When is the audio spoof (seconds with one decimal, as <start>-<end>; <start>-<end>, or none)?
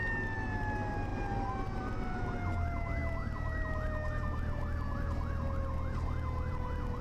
none